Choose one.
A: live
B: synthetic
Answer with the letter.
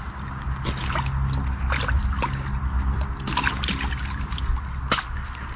A